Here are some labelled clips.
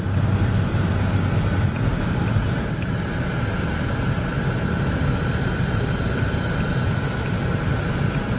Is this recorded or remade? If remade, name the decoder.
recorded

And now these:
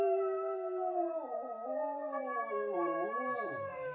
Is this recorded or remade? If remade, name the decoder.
remade, vocoder, BigVGAN v2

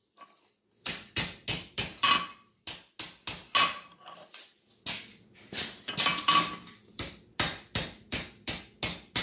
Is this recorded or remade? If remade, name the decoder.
recorded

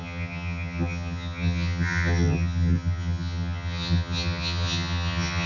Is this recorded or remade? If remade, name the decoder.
remade, vocoder, HiFi-GAN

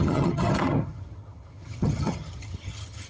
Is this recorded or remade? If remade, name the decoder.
remade, vocoder, HiFi-GAN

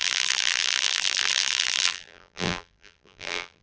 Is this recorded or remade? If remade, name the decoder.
remade, vocoder, BigVGAN v2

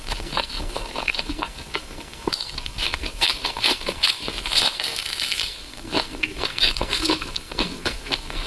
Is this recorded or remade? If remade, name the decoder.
remade, codec, SNAC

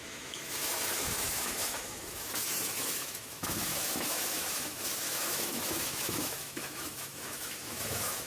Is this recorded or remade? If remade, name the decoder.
remade, autoencoder, DAC-VAE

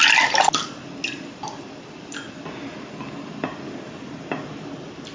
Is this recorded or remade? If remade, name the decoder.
recorded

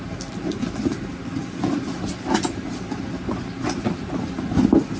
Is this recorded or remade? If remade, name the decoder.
recorded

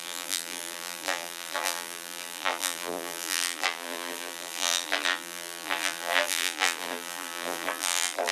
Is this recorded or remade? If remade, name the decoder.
remade, vocoder, BigVGAN v2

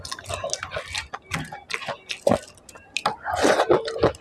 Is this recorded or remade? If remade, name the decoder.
recorded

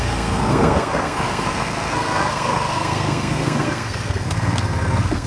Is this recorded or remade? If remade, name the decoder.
remade, codec, SNAC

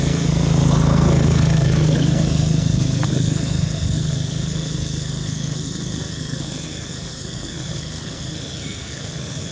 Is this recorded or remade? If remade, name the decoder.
remade, codec, SNAC